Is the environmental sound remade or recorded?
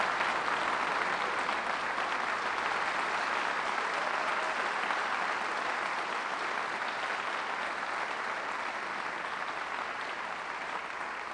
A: recorded